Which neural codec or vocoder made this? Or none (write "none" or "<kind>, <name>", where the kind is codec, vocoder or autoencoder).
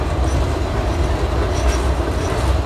none